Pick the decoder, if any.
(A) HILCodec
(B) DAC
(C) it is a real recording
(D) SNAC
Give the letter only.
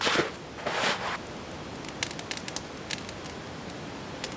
C